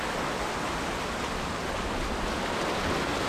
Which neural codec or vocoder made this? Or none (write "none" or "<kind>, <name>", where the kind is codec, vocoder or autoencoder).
none